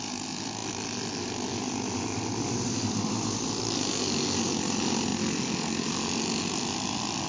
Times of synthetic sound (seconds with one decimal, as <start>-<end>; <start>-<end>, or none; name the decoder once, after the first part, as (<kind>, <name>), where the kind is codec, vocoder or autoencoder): none